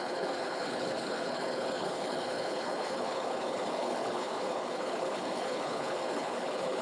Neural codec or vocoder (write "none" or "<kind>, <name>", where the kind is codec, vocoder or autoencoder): codec, HILCodec